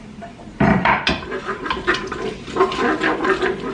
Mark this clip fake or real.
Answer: real